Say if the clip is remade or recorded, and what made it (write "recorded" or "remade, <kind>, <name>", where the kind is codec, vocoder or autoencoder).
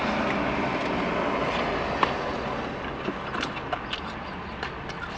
recorded